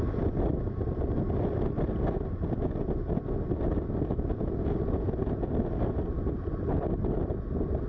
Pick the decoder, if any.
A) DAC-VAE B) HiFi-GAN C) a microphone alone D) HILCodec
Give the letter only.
C